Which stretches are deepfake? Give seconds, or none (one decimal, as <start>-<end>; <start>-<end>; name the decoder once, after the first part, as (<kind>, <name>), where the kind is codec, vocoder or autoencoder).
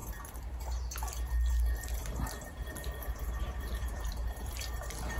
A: 0.0-0.6 (vocoder, BigVGAN v2); 2.0-5.2